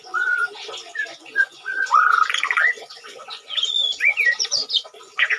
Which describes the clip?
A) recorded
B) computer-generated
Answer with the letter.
B